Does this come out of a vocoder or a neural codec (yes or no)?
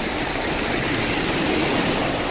no